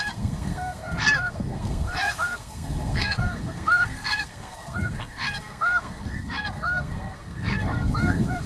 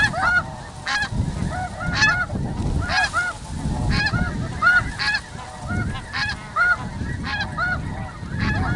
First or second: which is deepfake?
first